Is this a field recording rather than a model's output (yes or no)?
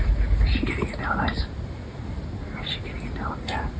yes